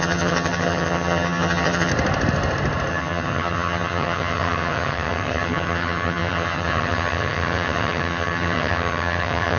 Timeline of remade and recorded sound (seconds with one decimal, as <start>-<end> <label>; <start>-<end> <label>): 0.0-1.9 remade; 1.9-2.9 recorded; 2.9-9.6 remade